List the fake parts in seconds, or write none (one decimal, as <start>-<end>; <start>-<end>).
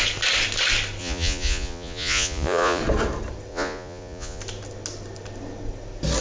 1.0-2.8; 3.5-4.4